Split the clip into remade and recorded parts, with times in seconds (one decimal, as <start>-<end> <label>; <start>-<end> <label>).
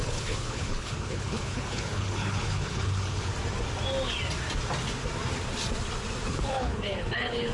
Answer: 0.0-3.3 remade; 3.3-6.3 recorded; 6.3-7.5 remade